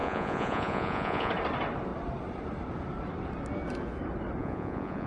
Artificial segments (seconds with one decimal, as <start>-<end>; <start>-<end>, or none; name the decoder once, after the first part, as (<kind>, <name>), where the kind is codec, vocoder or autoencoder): 0.0-1.3 (vocoder, Vocos); 4.4-5.1